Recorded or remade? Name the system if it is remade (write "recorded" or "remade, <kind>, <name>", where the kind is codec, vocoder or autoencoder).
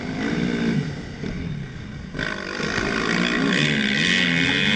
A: recorded